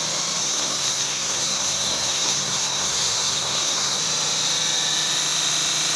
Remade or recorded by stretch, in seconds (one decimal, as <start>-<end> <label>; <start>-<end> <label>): 0.0-0.4 recorded; 0.4-4.0 remade; 4.0-6.0 recorded